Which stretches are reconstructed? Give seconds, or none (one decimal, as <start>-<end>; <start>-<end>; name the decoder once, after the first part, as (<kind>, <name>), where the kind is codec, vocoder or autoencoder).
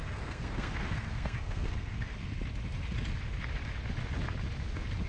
0.0-2.1 (codec, SNAC)